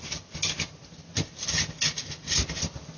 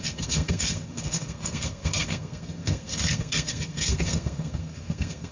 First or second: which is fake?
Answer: second